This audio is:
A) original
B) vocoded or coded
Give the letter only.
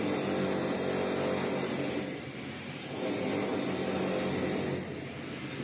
A